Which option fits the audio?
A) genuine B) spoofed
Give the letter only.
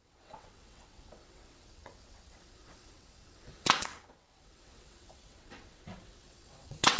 B